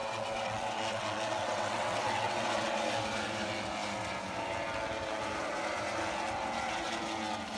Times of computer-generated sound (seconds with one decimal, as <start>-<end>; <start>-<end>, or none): 0.0-2.8